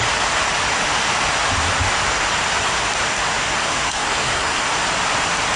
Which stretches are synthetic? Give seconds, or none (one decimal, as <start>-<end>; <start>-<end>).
3.6-4.6